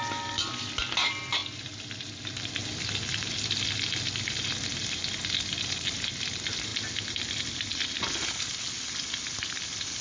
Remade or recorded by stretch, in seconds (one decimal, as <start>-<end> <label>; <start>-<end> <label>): 0.0-10.0 recorded